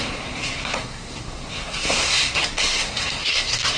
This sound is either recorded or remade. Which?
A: remade